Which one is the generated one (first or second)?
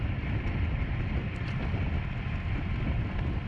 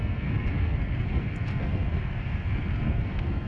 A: second